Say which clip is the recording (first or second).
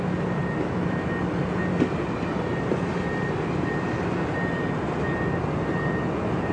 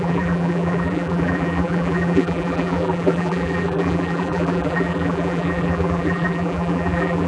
first